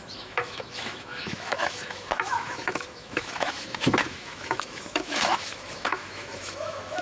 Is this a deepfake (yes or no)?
yes